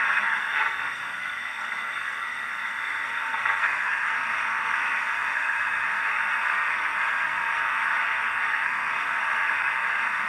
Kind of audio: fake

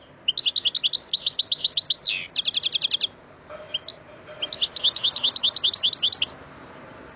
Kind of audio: real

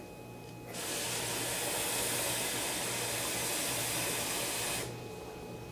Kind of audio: real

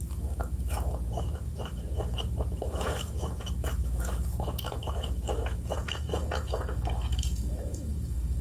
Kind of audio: fake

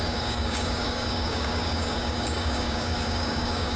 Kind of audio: fake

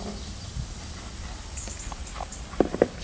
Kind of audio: real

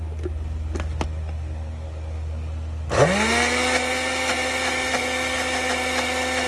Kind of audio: real